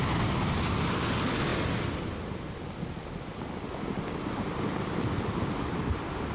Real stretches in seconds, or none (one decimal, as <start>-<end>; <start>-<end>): 0.0-6.3